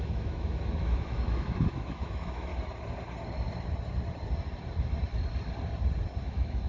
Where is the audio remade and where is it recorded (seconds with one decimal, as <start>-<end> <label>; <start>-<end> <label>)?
0.0-2.5 remade; 2.5-6.2 recorded; 6.2-6.7 remade